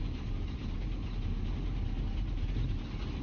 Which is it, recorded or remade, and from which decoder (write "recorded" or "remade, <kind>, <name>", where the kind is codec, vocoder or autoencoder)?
recorded